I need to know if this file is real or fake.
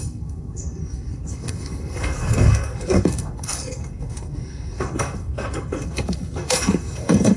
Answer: fake